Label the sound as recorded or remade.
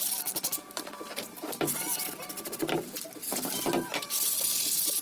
recorded